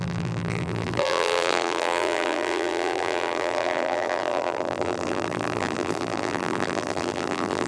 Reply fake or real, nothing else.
fake